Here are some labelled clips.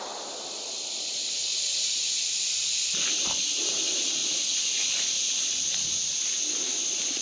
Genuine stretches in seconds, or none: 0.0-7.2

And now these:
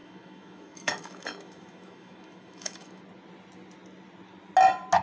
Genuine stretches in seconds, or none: 3.0-5.0

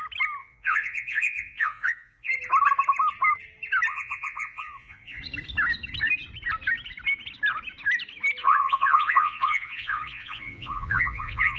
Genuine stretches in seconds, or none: 0.0-0.4; 2.3-3.9; 5.2-8.4

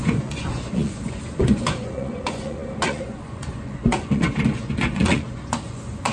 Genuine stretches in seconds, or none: none

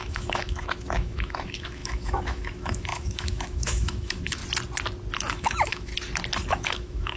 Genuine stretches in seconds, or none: 4.4-5.3; 5.9-6.5

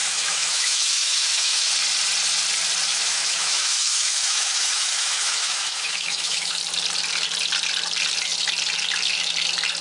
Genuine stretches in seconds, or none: 1.7-2.9; 6.5-9.8

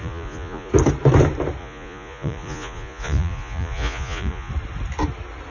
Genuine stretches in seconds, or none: 0.7-1.6; 4.5-5.5